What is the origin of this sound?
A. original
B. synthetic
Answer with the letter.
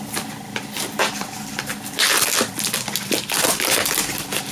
B